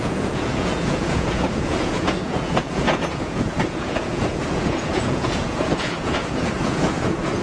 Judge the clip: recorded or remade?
remade